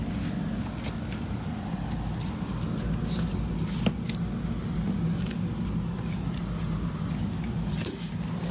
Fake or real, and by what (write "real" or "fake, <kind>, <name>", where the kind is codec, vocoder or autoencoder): real